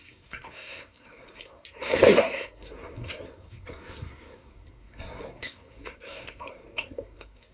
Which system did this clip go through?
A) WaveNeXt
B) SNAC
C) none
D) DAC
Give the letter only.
B